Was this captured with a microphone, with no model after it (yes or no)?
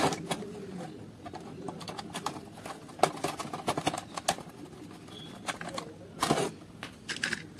yes